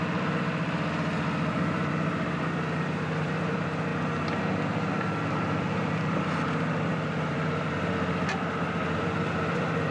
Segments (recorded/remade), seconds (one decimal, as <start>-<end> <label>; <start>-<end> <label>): 0.0-3.9 remade; 3.9-4.4 recorded; 4.4-9.9 remade